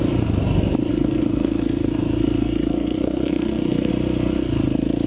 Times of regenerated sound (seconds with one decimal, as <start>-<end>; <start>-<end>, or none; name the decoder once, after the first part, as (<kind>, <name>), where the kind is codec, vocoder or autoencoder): 0.9-3.9 (codec, SNAC)